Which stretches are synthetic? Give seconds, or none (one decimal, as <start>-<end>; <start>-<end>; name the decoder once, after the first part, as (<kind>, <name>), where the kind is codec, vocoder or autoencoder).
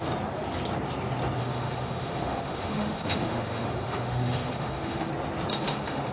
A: 1.4-5.1 (autoencoder, DAC-VAE); 5.5-6.1